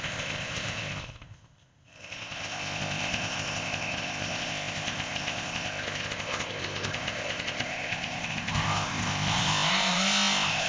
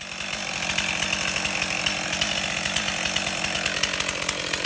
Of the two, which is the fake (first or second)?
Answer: first